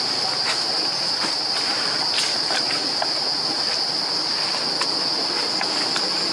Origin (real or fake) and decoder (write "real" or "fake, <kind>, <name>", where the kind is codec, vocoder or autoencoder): real